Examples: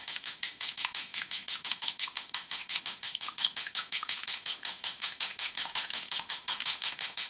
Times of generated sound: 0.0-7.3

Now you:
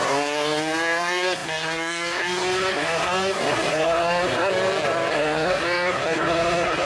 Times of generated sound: 0.0-4.5; 5.1-6.9

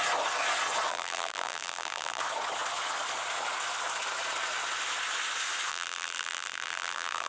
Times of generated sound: 0.9-2.2; 5.7-7.3

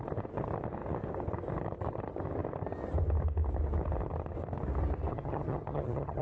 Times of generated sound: 5.1-6.2

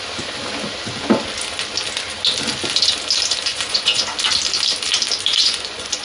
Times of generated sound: 3.5-4.0; 5.3-6.0

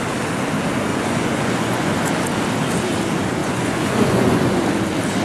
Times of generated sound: 0.9-1.9; 3.4-4.6

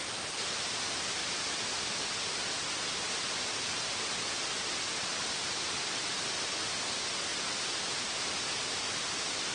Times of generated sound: 1.2-6.1; 7.3-8.4

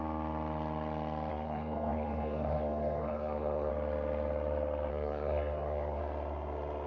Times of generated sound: 1.3-3.7; 4.9-6.0